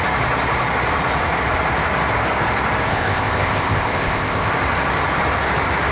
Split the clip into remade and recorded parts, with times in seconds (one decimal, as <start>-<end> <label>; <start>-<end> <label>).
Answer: 0.0-2.9 recorded; 2.9-4.5 remade; 4.5-5.9 recorded